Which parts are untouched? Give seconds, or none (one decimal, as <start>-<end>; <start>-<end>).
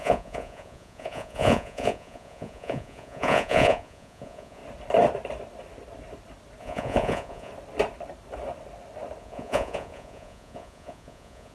4.6-6.6; 7.5-9.2